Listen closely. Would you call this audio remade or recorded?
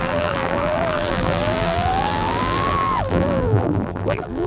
remade